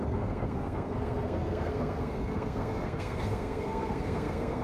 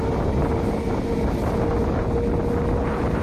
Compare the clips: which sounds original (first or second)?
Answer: second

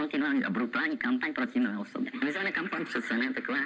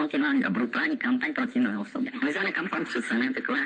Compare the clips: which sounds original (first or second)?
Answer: first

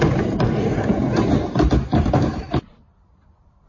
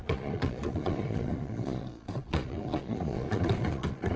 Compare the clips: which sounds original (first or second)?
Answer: first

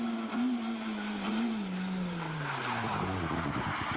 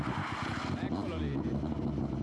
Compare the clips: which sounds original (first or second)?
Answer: second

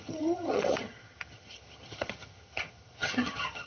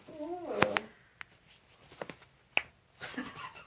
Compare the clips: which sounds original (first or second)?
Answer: second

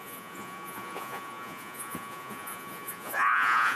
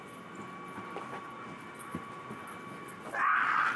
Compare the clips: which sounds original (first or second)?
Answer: second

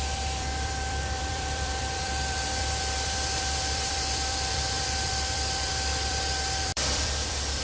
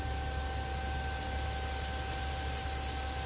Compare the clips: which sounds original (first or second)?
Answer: second